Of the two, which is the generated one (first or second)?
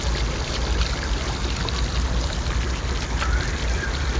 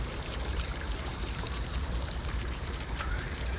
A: second